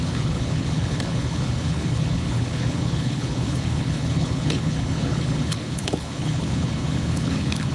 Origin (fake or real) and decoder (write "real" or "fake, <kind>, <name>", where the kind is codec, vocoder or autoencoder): fake, codec, HILCodec